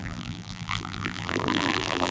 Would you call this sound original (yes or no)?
no